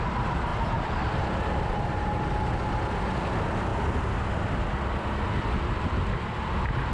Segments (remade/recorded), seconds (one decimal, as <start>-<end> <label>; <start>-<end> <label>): 0.0-6.9 recorded